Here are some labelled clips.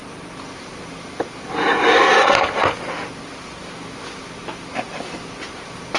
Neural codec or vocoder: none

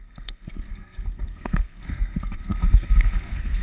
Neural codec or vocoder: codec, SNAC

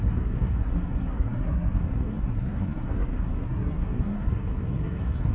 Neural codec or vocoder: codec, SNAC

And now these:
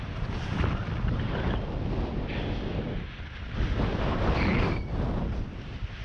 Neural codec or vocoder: none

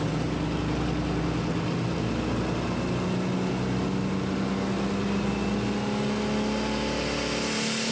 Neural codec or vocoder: none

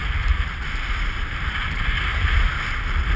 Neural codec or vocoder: none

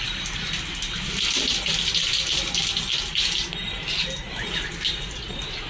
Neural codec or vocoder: none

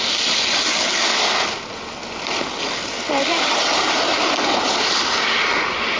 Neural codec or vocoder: none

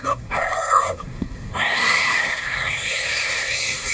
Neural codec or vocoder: codec, SNAC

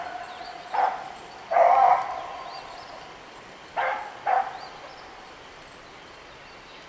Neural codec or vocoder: none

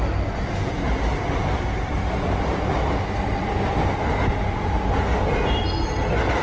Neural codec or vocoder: none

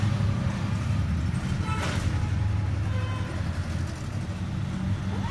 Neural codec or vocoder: none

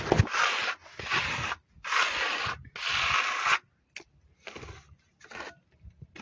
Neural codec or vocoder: none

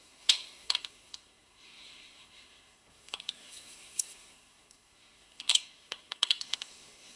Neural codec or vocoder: codec, SNAC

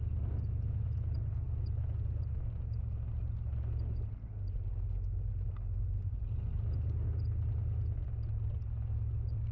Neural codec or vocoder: none